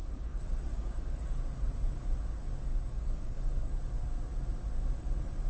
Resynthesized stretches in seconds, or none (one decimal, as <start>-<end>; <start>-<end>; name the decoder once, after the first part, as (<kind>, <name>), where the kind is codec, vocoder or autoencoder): 0.0-1.4 (codec, DAC); 2.7-3.7